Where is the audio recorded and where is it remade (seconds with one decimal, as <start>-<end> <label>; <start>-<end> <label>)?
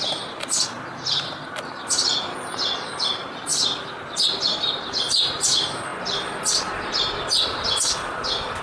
0.0-8.6 recorded